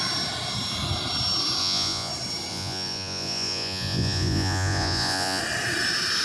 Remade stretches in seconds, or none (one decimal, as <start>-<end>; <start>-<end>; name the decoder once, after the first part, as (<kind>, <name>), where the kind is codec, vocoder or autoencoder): 1.6-2.1 (vocoder, Vocos); 2.5-5.4